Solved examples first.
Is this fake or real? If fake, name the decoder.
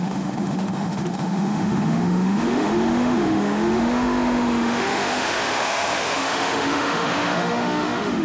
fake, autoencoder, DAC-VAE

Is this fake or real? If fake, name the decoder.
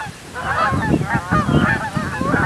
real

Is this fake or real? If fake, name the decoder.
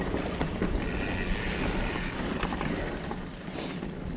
real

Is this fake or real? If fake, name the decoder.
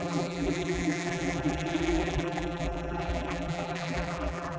fake, vocoder, BigVGAN v2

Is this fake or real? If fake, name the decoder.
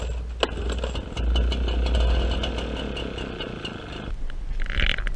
real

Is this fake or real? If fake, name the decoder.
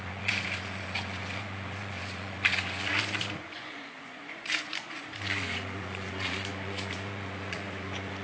fake, vocoder, Vocos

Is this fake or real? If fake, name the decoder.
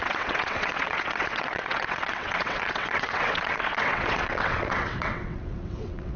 fake, vocoder, WaveNeXt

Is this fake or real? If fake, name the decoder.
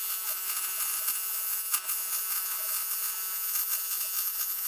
fake, vocoder, Vocos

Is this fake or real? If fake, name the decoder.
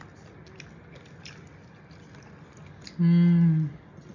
real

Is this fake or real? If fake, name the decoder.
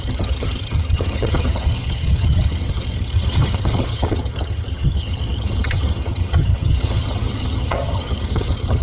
fake, vocoder, HiFi-GAN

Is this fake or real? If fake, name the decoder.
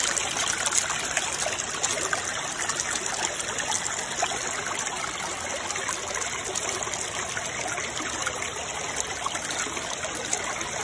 real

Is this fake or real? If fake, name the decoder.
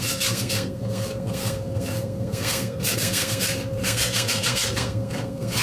fake, codec, SNAC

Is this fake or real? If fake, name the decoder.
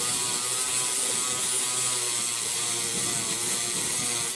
real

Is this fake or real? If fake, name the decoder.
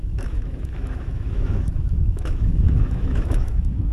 fake, autoencoder, DAC-VAE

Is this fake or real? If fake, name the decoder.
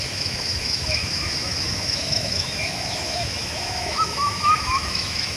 fake, autoencoder, DAC-VAE